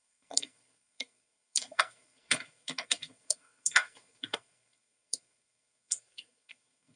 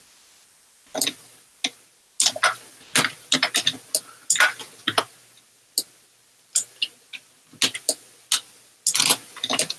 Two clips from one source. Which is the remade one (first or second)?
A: first